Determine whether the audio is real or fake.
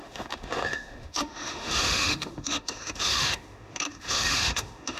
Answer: fake